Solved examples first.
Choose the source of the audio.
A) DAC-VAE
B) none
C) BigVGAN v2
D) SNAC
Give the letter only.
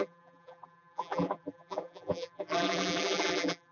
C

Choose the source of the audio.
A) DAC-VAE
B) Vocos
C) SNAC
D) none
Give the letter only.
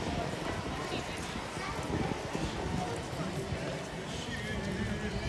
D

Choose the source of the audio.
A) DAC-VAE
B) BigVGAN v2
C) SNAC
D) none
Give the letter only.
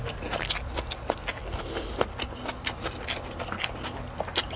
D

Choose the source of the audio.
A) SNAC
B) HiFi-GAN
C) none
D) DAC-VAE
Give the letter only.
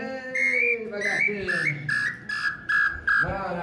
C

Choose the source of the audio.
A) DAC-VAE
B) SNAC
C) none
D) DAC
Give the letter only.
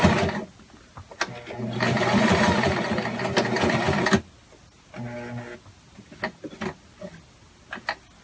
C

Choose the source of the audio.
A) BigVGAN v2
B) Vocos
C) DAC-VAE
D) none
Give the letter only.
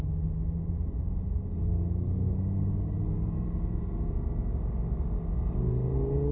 D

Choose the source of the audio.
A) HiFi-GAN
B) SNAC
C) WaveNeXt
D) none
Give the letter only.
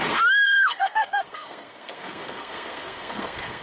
B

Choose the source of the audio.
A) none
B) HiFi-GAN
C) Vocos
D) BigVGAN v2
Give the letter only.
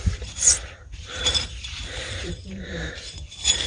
D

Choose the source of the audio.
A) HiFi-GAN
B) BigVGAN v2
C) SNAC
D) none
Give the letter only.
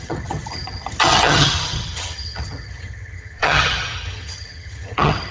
A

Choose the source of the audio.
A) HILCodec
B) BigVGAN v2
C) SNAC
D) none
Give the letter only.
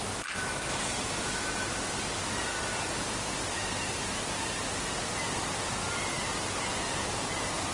D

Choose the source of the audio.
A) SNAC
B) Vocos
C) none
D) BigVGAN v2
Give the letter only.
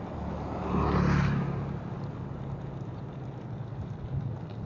C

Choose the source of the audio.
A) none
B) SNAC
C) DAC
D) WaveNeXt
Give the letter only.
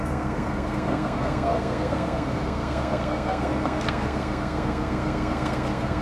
B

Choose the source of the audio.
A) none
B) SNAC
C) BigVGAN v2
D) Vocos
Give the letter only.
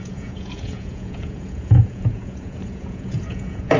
D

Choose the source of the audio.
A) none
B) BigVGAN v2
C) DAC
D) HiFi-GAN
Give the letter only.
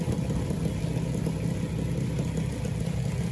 A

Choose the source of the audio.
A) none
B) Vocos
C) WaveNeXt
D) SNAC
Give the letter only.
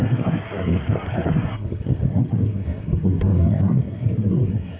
D